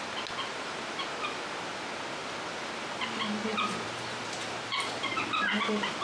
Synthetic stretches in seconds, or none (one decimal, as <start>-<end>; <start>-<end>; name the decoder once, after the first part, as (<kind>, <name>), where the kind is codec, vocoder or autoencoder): 3.5-5.2 (vocoder, BigVGAN v2)